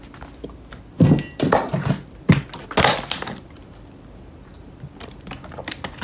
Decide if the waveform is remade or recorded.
recorded